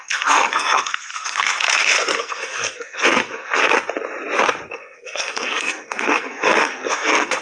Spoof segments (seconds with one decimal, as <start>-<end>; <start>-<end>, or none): 0.0-3.6; 4.7-7.4